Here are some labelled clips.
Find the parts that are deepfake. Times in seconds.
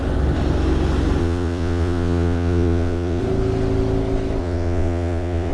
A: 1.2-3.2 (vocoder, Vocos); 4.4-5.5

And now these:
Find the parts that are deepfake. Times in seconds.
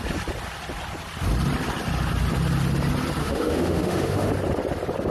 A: 3.2-4.3 (autoencoder, DAC-VAE)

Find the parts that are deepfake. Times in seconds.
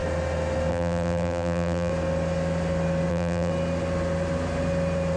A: 0.7-1.9 (vocoder, BigVGAN v2); 3.1-3.5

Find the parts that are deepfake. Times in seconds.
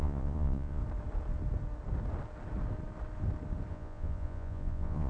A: 0.0-0.8 (vocoder, Vocos); 3.7-5.1